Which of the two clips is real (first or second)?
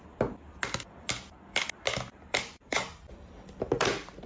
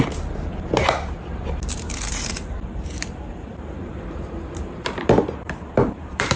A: first